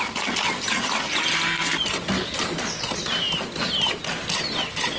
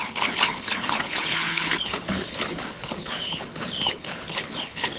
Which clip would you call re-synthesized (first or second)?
second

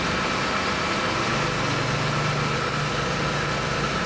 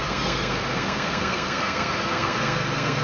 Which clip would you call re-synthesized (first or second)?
second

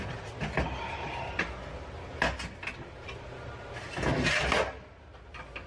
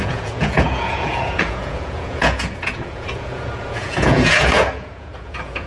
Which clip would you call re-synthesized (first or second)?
second